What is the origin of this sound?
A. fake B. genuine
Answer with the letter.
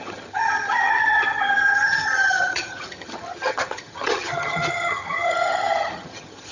A